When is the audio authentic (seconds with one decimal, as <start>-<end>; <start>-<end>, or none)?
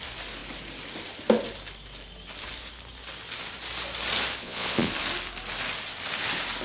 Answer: 0.0-4.4; 4.9-6.6